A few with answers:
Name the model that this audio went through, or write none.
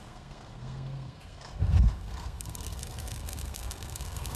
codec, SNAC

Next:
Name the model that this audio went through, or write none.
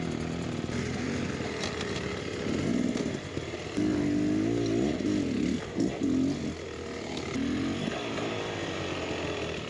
none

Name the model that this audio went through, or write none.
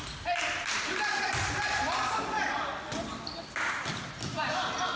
none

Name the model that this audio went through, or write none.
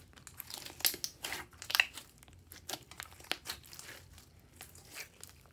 none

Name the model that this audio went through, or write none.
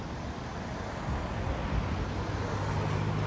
none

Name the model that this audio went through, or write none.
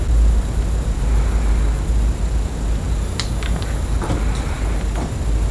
none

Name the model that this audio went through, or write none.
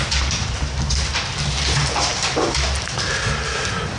none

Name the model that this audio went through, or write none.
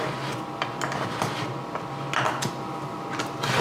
none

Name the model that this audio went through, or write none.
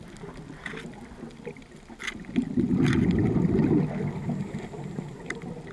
none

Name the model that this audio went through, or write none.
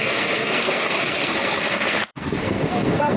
codec, SNAC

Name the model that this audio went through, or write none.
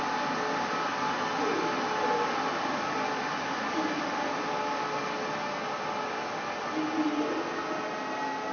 none